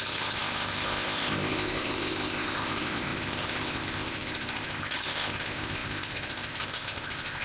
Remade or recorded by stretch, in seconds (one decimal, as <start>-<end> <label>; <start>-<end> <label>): 0.0-7.4 remade

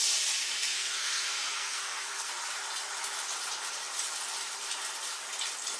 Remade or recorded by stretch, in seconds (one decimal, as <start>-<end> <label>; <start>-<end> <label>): 0.0-0.4 recorded; 0.4-2.3 remade; 2.3-5.8 recorded

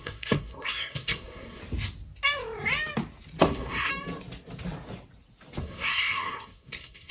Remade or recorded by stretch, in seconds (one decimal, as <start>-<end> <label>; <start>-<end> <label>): 0.0-1.6 remade; 1.6-3.4 recorded; 3.4-3.9 remade; 3.9-5.6 recorded; 5.6-7.1 remade

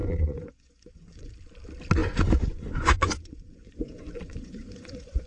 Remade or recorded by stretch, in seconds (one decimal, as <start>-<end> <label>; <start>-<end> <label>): 0.0-1.3 remade; 1.3-2.0 recorded; 2.0-5.3 remade

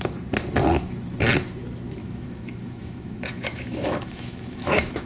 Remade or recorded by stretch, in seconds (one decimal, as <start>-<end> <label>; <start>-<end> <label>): 0.0-2.0 recorded; 2.0-5.0 remade